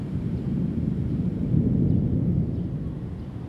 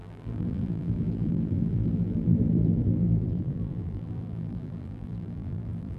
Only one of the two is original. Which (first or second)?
first